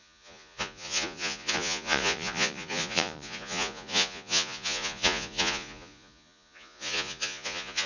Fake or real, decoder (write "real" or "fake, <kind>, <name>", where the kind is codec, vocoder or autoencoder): fake, vocoder, Vocos